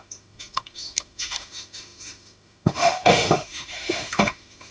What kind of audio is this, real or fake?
fake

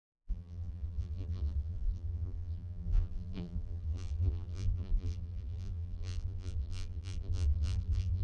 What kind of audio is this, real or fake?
fake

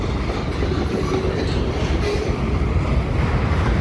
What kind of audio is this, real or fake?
real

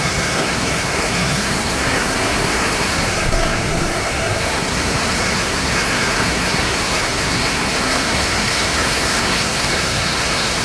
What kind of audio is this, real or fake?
fake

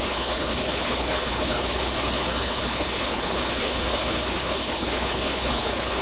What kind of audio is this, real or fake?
fake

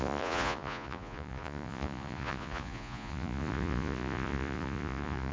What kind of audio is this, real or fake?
fake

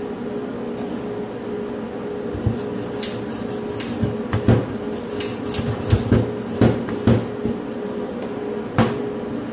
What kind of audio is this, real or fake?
real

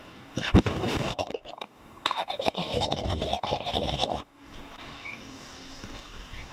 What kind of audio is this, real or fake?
fake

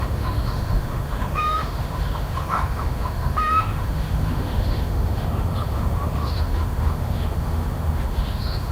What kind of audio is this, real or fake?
fake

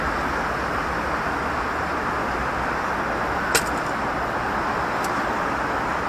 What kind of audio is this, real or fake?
real